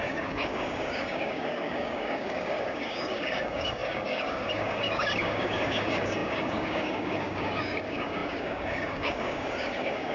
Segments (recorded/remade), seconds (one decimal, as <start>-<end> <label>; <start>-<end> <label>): 0.0-10.1 remade